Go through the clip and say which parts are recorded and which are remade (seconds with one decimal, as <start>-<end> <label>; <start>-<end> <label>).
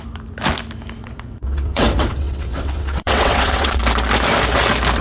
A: 0.0-1.0 recorded; 1.0-3.8 remade; 3.8-5.0 recorded